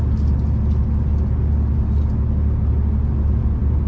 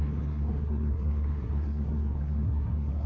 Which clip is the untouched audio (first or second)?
first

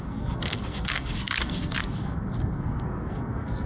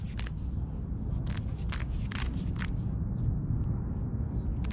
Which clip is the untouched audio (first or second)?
second